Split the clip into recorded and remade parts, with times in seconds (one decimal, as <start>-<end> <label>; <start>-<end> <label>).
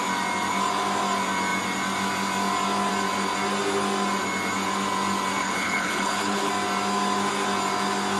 0.0-5.4 recorded; 5.4-6.5 remade; 6.5-8.2 recorded